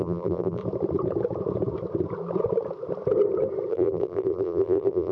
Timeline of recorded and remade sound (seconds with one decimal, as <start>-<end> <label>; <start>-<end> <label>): 0.0-0.6 remade; 0.6-3.7 recorded; 3.7-5.1 remade